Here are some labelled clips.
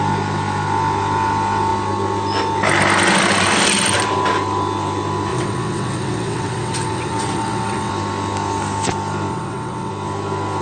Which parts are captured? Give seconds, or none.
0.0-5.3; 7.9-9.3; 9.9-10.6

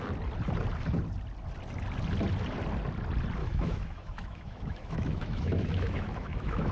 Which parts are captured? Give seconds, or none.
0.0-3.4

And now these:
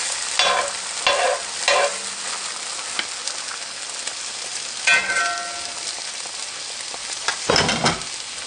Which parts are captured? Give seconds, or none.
0.0-7.0; 7.5-8.5